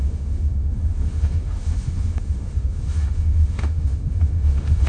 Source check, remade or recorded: remade